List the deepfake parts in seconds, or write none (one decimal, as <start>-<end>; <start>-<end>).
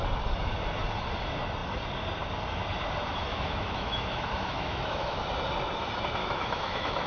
3.3-5.2; 6.2-7.1